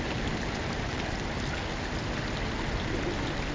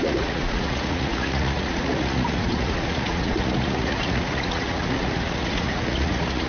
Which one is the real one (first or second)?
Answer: first